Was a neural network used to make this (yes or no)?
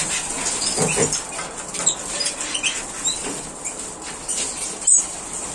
no